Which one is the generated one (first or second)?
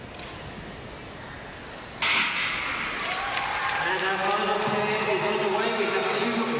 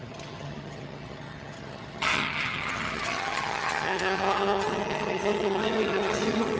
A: second